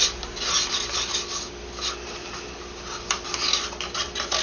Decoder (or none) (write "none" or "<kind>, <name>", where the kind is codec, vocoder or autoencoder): none